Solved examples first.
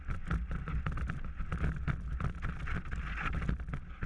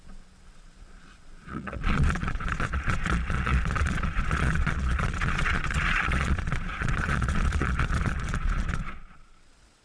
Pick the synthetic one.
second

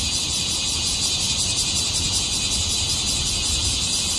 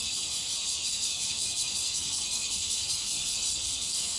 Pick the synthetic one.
second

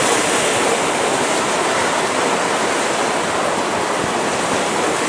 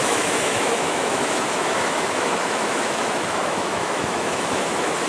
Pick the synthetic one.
second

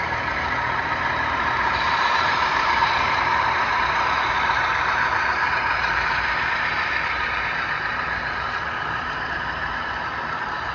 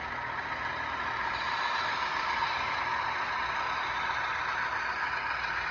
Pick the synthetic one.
first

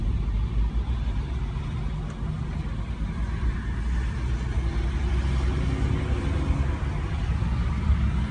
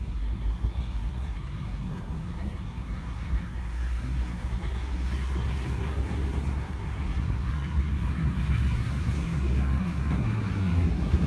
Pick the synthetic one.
second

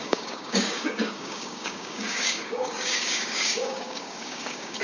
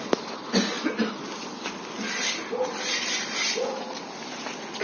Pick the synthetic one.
first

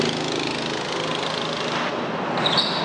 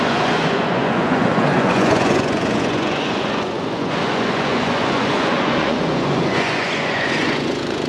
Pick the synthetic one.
second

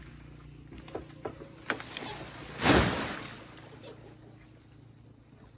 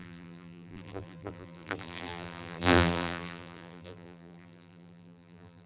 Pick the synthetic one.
second